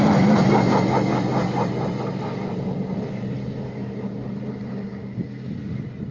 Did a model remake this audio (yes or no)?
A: no